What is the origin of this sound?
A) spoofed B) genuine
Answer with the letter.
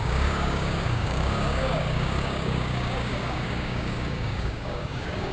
A